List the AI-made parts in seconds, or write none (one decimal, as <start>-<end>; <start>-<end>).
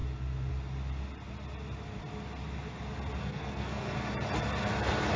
3.2-3.9